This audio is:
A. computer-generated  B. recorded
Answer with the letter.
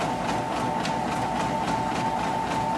B